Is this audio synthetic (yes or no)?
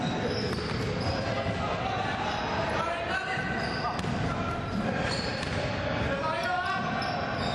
no